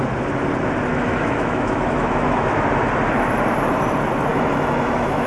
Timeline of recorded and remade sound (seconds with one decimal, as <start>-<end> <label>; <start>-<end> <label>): 0.0-0.9 recorded; 0.9-2.7 remade; 2.7-4.3 recorded; 4.3-5.3 remade